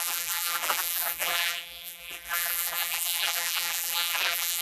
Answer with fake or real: fake